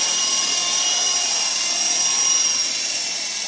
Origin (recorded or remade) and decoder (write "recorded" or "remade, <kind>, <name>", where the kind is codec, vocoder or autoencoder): recorded